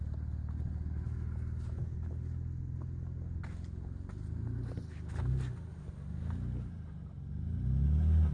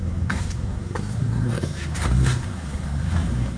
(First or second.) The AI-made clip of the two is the second